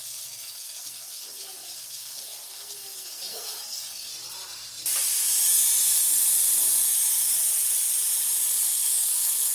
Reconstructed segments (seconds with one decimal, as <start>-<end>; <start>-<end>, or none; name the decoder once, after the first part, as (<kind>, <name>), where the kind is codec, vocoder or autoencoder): 0.0-4.1 (codec, SNAC); 8.6-9.5